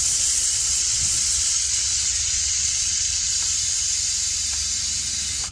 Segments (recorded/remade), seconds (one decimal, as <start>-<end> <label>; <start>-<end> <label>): 0.0-3.3 remade; 3.3-5.5 recorded

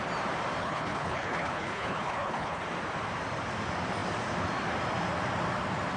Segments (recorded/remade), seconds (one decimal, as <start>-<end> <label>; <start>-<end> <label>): 0.0-0.6 recorded; 0.6-2.6 remade; 2.6-6.0 recorded

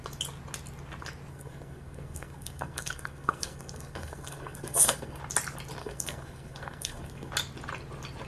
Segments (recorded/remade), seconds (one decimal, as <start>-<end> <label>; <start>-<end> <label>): 0.0-1.3 recorded; 1.3-5.2 remade; 5.2-5.8 recorded; 5.8-7.3 remade; 7.3-8.3 recorded

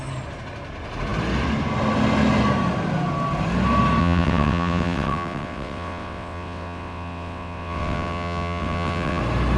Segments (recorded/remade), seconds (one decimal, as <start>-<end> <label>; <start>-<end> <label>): 0.0-4.0 recorded; 4.0-9.2 remade; 9.2-9.6 recorded

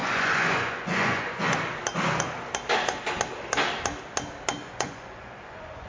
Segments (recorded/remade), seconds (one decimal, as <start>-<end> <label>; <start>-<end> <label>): 0.0-1.4 remade; 1.4-4.6 recorded; 4.6-5.9 remade